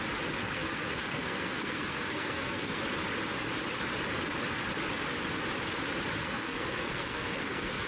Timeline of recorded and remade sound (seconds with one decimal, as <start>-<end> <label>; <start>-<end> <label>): 0.0-0.4 recorded; 0.4-2.8 remade; 2.8-6.2 recorded; 6.2-7.9 remade